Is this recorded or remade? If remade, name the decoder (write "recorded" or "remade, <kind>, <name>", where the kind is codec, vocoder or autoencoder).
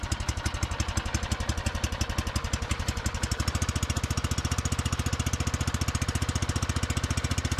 recorded